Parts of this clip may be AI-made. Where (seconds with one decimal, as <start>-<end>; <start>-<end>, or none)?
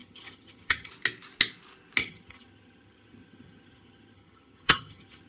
0.0-0.9; 2.0-5.3